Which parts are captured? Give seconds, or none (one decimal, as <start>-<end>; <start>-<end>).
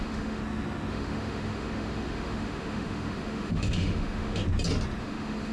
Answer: 0.4-0.9; 4.4-5.0